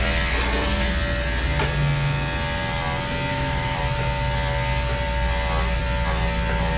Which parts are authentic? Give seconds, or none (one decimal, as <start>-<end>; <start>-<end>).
0.0-3.3; 3.8-6.8